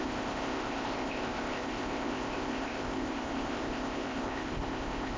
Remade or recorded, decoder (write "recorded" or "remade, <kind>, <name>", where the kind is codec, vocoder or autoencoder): remade, codec, ZipCodec